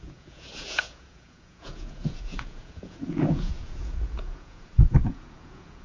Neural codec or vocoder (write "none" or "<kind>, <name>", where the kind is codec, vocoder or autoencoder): vocoder, Vocos